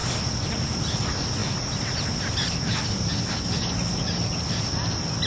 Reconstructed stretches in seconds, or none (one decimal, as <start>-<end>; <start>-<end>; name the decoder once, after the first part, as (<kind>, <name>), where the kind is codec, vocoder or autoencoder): none